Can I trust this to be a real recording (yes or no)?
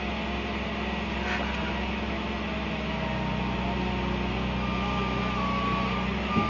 yes